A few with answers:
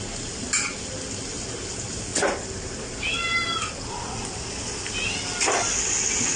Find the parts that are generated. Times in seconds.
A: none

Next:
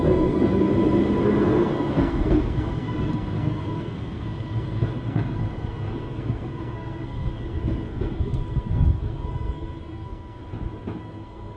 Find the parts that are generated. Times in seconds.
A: 0.0-0.7 (codec, SNAC); 1.4-10.4; 11.0-11.6

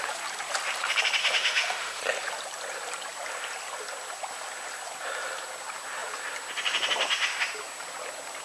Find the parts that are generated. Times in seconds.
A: 1.2-2.0 (autoencoder, DAC-VAE)

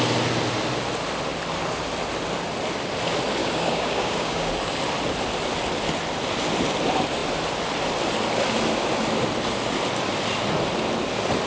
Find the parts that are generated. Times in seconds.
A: 3.4-4.5 (codec, DAC)